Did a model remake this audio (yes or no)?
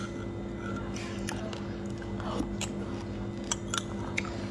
no